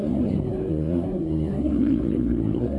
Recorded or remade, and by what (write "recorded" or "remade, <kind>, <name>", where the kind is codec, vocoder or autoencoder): remade, codec, SNAC